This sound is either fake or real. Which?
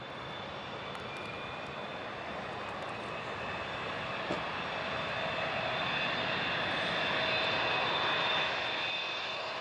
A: real